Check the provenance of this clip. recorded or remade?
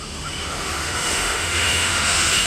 remade